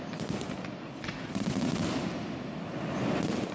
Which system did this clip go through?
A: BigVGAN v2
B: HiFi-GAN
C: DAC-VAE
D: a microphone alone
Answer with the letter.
D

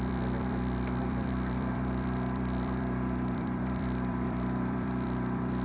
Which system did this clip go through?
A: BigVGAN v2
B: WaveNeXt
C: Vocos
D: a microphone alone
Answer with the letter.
A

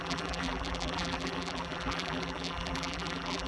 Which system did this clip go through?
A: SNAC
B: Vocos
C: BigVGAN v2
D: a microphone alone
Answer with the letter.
C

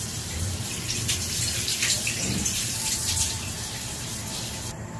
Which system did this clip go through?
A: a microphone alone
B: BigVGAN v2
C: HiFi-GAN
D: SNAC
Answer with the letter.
B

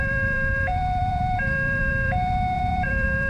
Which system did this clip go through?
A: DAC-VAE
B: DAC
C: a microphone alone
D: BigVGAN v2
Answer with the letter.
D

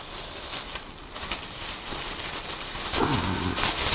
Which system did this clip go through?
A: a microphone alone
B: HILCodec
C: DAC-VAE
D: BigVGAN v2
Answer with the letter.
A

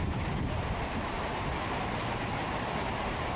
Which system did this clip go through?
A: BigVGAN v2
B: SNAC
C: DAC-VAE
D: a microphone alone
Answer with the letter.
D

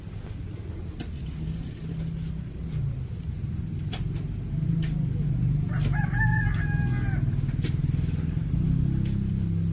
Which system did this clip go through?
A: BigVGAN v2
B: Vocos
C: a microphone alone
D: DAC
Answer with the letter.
C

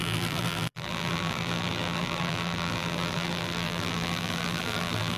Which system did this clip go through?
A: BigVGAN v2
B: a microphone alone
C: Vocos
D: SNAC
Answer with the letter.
A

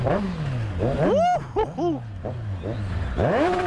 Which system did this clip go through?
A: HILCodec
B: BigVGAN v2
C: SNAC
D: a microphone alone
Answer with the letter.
D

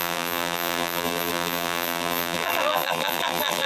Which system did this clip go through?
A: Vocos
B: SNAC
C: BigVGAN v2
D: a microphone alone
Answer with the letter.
C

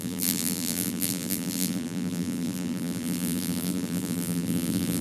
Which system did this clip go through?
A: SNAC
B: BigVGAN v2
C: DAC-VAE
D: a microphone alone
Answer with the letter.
B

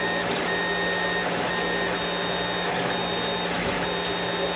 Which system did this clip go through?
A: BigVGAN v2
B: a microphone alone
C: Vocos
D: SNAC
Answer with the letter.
B